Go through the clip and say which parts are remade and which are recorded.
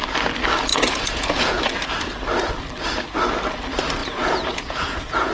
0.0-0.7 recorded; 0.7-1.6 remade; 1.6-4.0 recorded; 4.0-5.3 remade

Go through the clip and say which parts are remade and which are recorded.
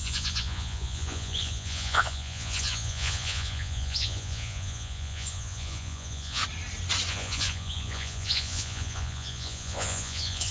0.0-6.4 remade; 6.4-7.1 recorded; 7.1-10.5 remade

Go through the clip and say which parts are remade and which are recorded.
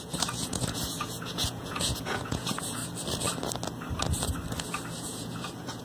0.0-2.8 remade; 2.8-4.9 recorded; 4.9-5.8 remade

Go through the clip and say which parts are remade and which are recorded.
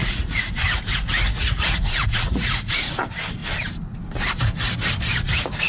0.0-3.0 remade; 3.0-5.7 recorded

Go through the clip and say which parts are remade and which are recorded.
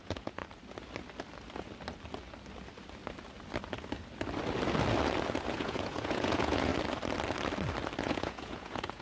0.0-0.4 remade; 0.4-5.5 recorded; 5.5-6.7 remade; 6.7-8.0 recorded; 8.0-9.0 remade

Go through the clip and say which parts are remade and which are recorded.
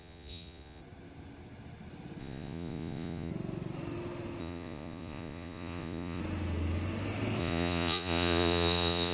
0.0-0.8 remade; 0.8-2.2 recorded; 2.2-3.3 remade; 3.3-4.4 recorded; 4.4-6.2 remade; 6.2-7.4 recorded; 7.4-9.1 remade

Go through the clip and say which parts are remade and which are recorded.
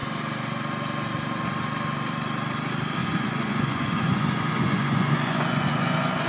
0.0-3.0 recorded; 3.0-6.3 remade